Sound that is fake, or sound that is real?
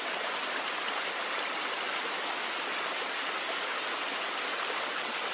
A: real